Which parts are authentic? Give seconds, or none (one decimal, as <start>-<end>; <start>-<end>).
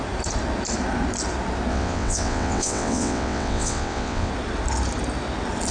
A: 0.0-1.7; 4.3-5.7